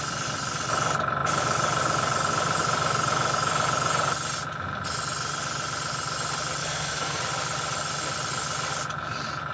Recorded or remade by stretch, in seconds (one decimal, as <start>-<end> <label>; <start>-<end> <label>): 0.0-6.6 recorded; 6.6-7.2 remade; 7.2-9.5 recorded